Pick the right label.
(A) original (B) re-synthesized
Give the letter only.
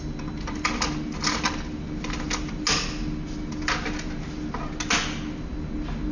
A